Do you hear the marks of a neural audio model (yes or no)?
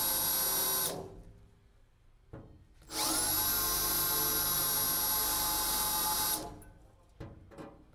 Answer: no